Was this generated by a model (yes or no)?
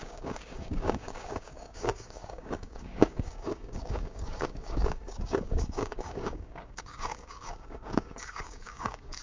yes